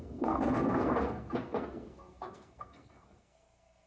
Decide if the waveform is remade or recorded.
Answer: remade